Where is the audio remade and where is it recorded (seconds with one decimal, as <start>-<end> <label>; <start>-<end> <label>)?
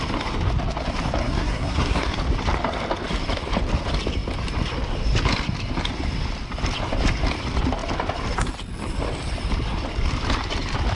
0.0-1.2 recorded; 1.2-2.1 remade; 2.1-10.9 recorded